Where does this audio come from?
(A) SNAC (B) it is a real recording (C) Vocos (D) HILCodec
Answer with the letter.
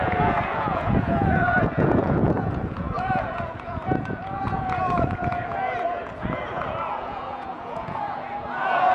C